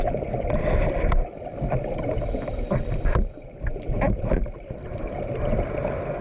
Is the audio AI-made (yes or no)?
yes